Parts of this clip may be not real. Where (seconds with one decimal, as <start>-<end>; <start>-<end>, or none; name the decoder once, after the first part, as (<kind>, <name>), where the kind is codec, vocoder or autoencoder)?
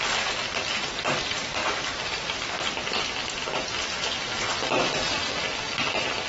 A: none